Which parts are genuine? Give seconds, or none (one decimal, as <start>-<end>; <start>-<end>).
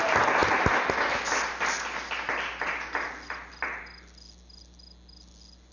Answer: 0.0-5.7